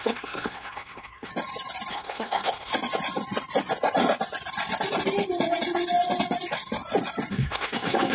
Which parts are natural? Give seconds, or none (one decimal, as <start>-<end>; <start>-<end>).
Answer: 1.3-1.9; 2.7-7.3